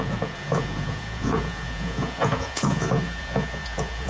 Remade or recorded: remade